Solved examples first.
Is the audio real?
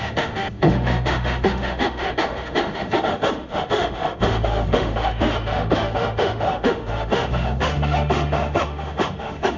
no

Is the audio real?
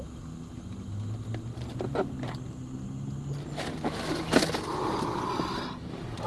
yes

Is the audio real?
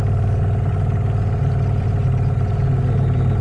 yes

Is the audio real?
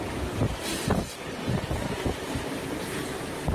yes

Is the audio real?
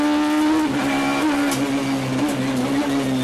yes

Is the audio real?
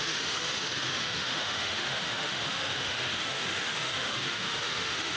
no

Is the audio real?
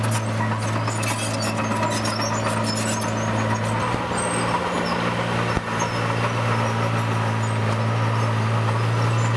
yes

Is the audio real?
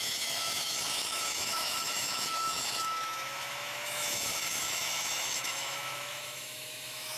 no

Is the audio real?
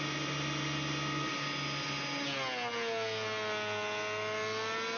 yes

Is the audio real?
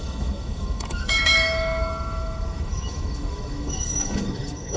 no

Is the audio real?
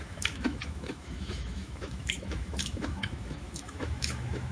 no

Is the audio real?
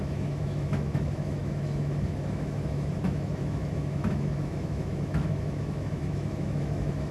no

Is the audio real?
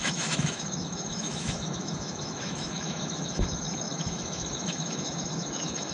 no